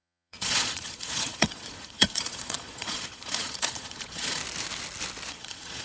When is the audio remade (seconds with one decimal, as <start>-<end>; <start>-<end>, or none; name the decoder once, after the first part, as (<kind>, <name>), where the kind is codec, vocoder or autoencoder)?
0.0-4.4 (vocoder, Vocos); 5.3-5.8